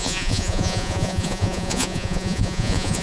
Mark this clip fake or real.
fake